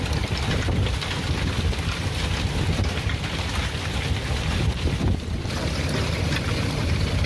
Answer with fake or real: real